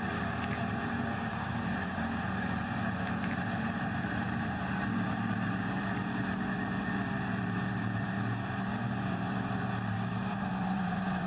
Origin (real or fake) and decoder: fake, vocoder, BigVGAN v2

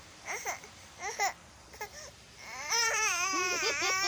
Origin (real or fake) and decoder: fake, vocoder, BigVGAN v2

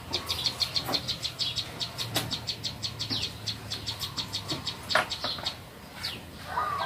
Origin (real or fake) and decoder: real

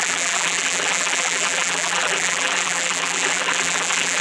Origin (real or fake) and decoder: fake, vocoder, BigVGAN v2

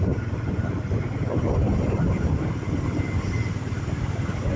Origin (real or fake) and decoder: real